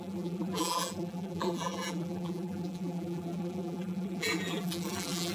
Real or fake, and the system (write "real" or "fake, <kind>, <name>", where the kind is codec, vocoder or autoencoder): fake, vocoder, BigVGAN v2